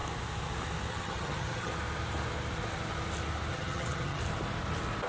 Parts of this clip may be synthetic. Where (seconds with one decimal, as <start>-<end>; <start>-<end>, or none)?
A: 0.9-1.7; 3.5-4.2